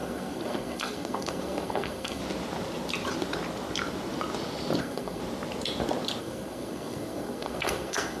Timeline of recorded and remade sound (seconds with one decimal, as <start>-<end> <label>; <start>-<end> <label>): 0.0-2.2 remade; 2.2-4.8 recorded; 4.8-5.2 remade; 5.2-6.2 recorded; 6.2-8.2 remade